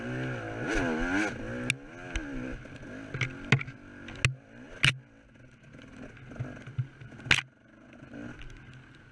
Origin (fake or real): real